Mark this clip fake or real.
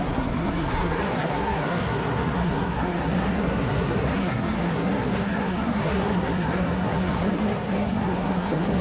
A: fake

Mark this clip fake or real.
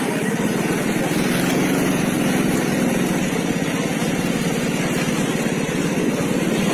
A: real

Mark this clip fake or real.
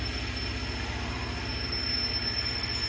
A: real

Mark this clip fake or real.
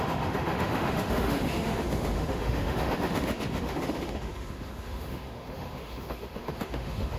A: fake